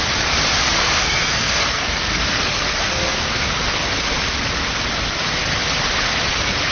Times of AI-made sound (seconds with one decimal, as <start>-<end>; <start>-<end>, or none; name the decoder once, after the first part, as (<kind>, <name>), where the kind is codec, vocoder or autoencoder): 0.8-4.0 (codec, SNAC)